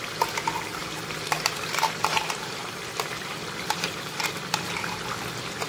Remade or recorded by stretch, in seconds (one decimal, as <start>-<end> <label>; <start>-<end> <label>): 0.0-0.8 recorded; 0.8-4.2 remade; 4.2-5.7 recorded